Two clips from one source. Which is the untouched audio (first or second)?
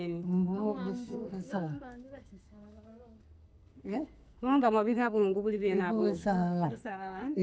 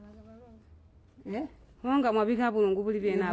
second